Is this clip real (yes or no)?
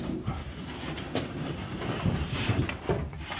no